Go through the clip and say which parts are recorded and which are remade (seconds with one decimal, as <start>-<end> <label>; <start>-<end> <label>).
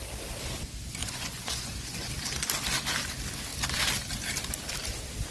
0.0-1.0 recorded; 1.0-2.1 remade; 2.1-5.3 recorded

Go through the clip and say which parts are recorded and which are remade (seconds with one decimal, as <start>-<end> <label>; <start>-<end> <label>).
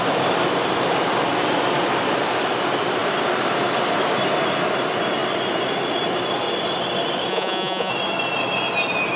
0.0-7.3 recorded; 7.3-7.9 remade; 7.9-9.2 recorded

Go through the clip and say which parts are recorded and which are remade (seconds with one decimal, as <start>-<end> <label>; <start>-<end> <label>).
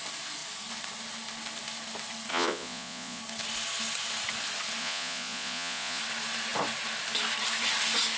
0.0-2.3 recorded; 2.3-3.2 remade; 3.2-4.8 recorded; 4.8-6.0 remade; 6.0-8.2 recorded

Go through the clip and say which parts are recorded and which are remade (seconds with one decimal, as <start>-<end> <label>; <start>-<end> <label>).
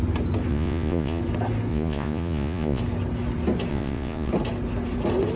0.0-0.5 recorded; 0.5-1.2 remade; 1.2-1.7 recorded; 1.7-2.8 remade; 2.8-3.7 recorded; 3.7-4.3 remade; 4.3-5.4 recorded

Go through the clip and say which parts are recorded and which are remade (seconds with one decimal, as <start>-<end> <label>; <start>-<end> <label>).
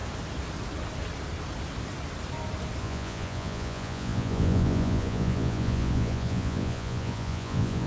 0.0-2.8 recorded; 2.8-7.9 remade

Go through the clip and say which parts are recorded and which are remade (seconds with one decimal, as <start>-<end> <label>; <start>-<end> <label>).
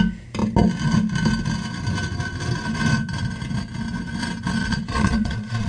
0.0-4.6 recorded; 4.6-5.7 remade